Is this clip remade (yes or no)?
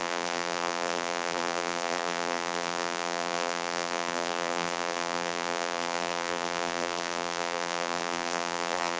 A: yes